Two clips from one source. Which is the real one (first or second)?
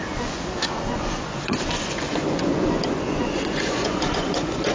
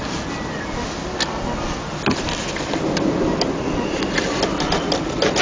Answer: second